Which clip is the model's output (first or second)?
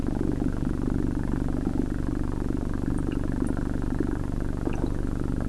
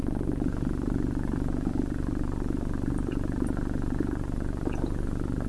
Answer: second